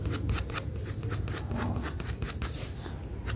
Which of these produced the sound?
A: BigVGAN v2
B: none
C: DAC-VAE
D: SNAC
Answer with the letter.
B